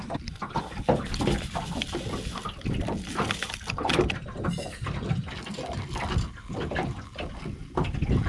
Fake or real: real